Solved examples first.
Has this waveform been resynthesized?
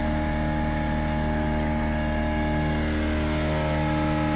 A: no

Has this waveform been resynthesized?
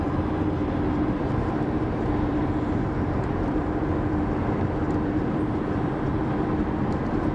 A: yes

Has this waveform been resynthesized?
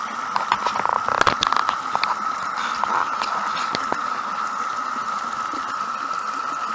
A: no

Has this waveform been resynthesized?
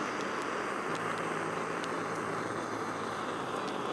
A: yes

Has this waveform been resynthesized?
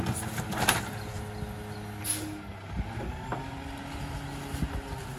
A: no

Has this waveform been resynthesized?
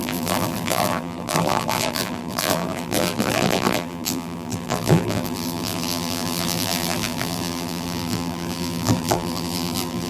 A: yes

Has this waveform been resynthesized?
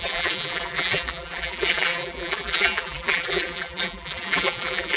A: yes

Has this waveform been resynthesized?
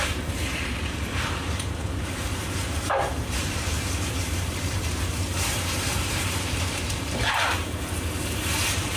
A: yes